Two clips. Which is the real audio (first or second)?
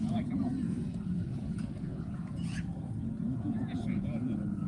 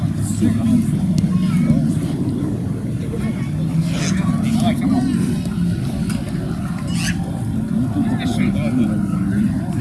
second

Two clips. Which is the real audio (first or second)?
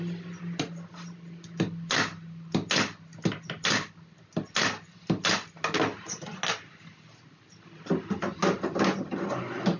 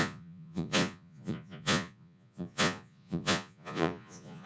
first